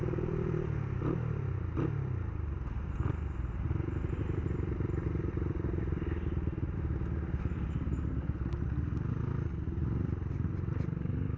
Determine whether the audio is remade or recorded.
recorded